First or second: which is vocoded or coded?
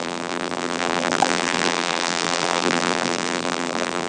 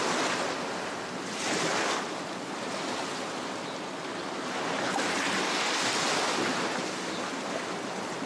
first